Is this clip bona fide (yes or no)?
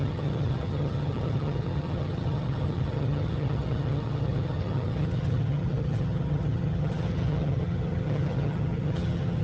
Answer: no